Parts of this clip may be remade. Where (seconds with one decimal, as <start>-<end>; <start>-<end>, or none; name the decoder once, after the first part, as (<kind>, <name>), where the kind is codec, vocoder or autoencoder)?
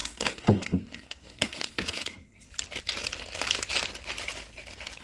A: 0.0-2.5 (codec, SNAC)